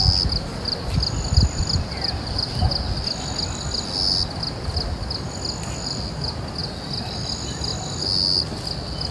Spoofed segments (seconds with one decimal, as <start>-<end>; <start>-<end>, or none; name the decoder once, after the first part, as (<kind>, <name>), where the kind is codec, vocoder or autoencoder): 0.5-2.7 (vocoder, BigVGAN v2)